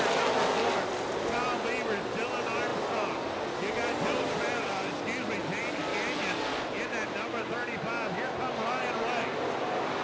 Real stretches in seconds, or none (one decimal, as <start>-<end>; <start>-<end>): 0.0-10.0